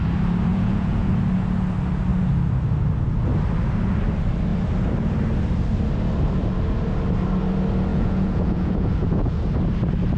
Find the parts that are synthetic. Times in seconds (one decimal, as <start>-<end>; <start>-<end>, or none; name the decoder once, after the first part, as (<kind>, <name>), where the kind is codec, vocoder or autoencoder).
0.5-1.1 (vocoder, Vocos); 7.9-9.4